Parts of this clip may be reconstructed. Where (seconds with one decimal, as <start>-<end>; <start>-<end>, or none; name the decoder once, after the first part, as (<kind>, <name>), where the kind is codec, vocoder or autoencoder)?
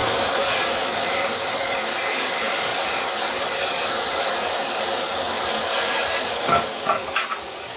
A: 0.0-7.8 (codec, DAC)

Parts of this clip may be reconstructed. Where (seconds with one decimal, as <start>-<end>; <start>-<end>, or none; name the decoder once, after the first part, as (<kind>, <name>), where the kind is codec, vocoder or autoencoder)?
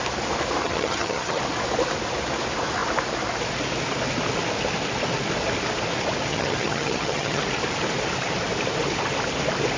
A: 0.6-1.4 (vocoder, HiFi-GAN); 6.3-7.4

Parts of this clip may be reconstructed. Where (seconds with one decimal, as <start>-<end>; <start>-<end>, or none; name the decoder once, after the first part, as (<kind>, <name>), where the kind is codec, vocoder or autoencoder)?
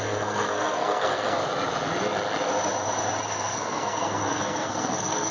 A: 0.0-1.4 (codec, SNAC); 3.3-5.3